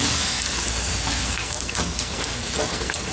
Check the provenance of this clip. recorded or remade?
remade